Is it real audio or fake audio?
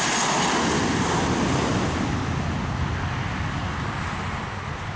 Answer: real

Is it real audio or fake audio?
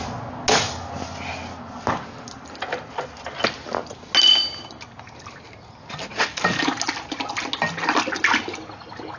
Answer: real